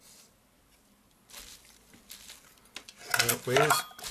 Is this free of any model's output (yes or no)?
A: yes